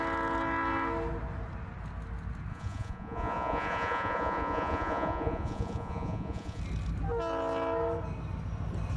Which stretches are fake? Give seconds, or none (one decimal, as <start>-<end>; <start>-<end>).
2.5-6.6